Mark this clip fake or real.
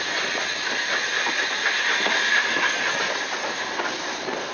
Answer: real